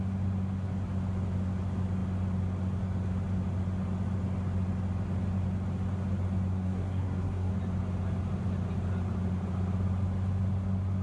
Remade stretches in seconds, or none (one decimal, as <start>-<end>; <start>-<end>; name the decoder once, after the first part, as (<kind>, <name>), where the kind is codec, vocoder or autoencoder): 6.5-7.5 (codec, SNAC)